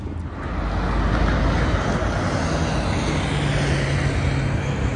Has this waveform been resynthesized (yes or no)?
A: no